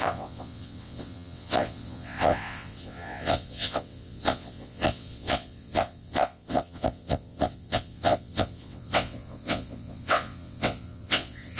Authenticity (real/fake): fake